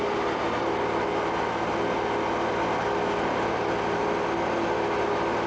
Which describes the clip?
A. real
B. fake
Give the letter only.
A